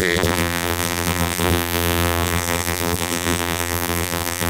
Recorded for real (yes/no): no